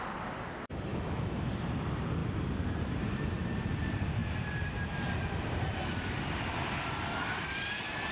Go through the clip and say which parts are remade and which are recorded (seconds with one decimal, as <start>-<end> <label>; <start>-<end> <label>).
0.0-0.9 recorded; 0.9-1.5 remade; 1.5-8.1 recorded